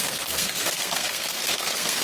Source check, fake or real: fake